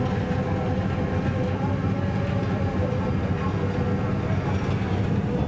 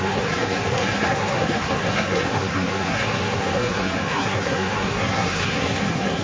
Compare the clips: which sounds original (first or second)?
first